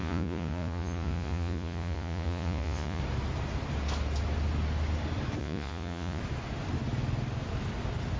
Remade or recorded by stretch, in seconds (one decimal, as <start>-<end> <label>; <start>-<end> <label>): 0.0-3.0 remade; 3.0-5.4 recorded; 5.4-6.2 remade; 6.2-8.2 recorded